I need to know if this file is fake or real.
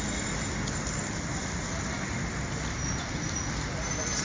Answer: real